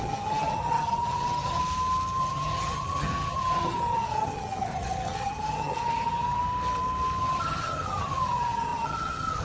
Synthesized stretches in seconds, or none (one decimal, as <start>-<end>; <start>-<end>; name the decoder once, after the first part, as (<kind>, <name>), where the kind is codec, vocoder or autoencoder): 0.0-1.6 (vocoder, HiFi-GAN); 2.2-6.4; 7.2-9.4